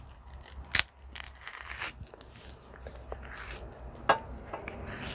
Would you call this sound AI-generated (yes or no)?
no